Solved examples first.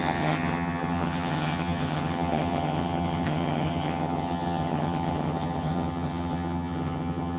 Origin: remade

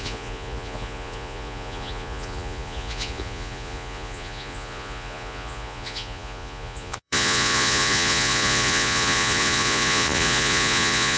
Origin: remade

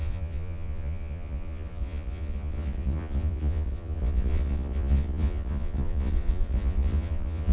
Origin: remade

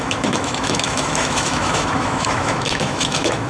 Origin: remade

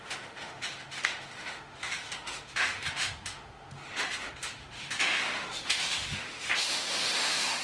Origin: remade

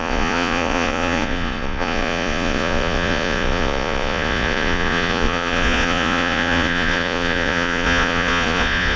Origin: remade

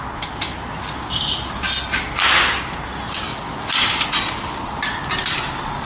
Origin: recorded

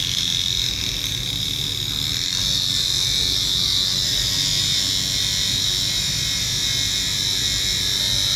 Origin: recorded